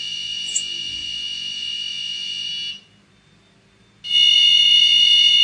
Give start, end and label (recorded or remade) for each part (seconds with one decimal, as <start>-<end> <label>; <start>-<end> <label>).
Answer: 0.0-2.5 remade; 2.5-4.3 recorded; 4.3-5.4 remade